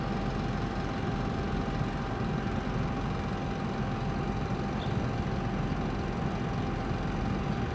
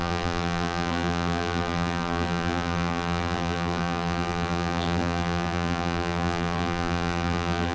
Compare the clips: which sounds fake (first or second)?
second